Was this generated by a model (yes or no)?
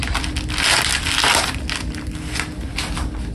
no